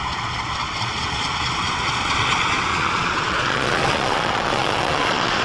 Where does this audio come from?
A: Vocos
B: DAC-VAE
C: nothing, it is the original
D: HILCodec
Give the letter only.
A